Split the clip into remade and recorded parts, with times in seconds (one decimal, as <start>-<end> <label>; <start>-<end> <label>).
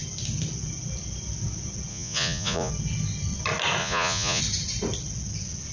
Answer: 0.0-1.9 recorded; 1.9-2.7 remade; 2.7-3.8 recorded; 3.8-4.4 remade; 4.4-5.7 recorded